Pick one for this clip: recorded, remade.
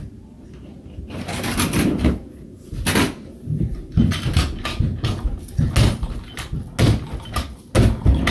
recorded